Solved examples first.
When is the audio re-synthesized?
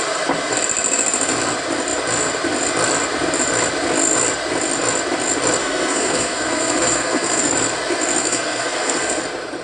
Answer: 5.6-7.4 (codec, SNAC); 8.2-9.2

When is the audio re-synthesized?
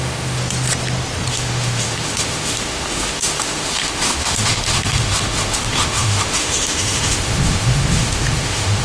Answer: 0.0-0.4 (autoencoder, DAC-VAE); 1.3-8.8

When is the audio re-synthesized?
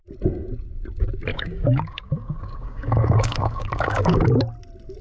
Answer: 1.3-4.3 (codec, DAC)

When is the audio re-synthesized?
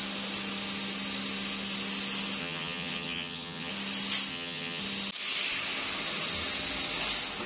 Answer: 2.4-3.7 (vocoder, HiFi-GAN); 4.3-4.8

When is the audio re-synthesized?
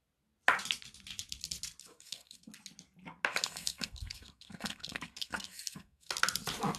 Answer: 1.8-2.5 (codec, SNAC); 3.3-6.1